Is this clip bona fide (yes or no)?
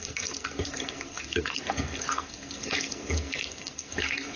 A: no